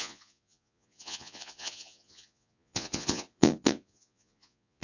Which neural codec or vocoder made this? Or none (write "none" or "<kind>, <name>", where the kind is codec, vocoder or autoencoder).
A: vocoder, Vocos